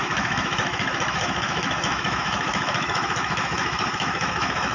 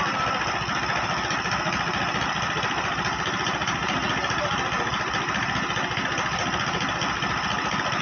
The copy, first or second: first